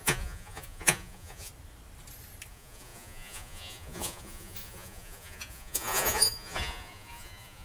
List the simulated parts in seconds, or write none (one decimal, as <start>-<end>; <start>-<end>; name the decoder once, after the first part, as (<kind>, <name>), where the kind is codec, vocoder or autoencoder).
0.0-1.5 (vocoder, Vocos); 2.5-7.6